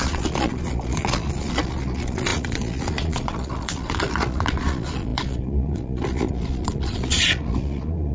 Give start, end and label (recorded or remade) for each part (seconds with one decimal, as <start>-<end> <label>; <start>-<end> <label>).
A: 0.0-8.1 remade